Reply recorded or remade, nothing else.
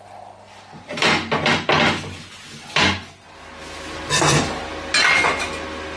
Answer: recorded